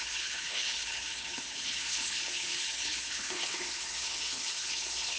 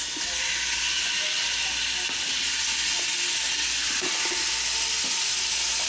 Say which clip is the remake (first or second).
first